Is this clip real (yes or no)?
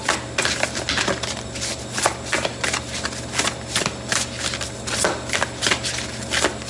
yes